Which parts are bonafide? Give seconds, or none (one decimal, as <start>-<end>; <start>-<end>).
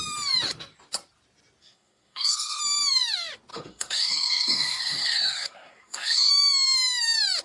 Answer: 0.0-1.6; 2.6-3.5; 6.3-7.4